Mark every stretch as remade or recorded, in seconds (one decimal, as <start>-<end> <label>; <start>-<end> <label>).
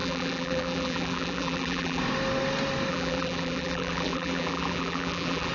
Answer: 0.0-2.0 remade; 2.0-2.9 recorded; 2.9-5.5 remade